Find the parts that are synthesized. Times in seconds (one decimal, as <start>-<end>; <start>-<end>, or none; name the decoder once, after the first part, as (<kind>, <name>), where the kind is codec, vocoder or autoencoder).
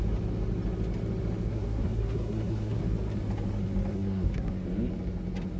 1.5-2.8 (codec, SNAC); 3.9-4.5